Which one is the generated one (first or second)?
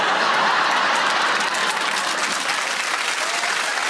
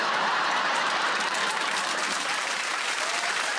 second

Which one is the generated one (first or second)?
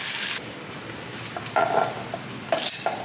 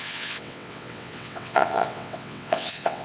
second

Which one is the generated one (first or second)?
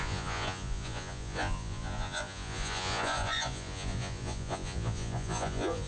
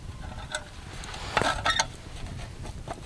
first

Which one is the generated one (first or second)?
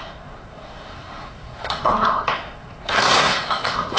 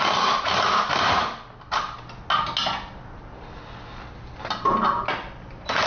first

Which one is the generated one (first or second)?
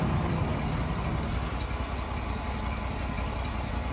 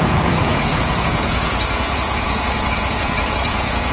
second